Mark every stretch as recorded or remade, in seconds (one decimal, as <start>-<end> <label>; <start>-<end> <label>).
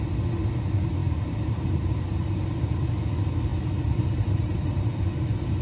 0.0-1.0 recorded; 1.0-2.8 remade; 2.8-3.5 recorded; 3.5-5.0 remade; 5.0-5.6 recorded